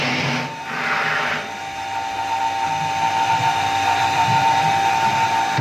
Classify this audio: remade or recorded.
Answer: recorded